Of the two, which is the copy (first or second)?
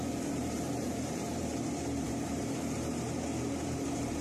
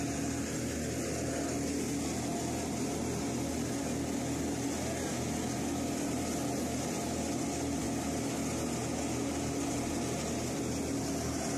first